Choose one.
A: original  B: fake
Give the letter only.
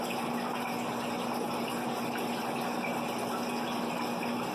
A